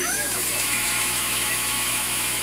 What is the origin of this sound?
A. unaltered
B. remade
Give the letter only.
B